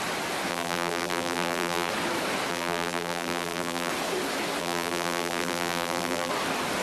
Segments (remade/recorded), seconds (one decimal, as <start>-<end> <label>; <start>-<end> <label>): 0.0-0.5 recorded; 0.5-1.9 remade; 1.9-2.5 recorded; 2.5-3.9 remade; 3.9-4.6 recorded; 4.6-6.3 remade; 6.3-6.8 recorded